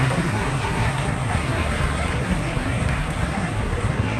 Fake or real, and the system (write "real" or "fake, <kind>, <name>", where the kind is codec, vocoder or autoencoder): fake, codec, SNAC